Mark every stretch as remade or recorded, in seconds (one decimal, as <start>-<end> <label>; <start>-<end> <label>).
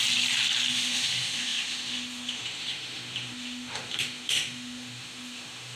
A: 0.0-0.7 recorded; 0.7-5.8 remade